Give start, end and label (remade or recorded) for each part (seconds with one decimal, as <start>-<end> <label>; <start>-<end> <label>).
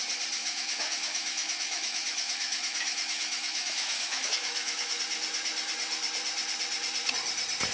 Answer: 0.0-0.4 recorded; 0.4-5.0 remade; 5.0-7.7 recorded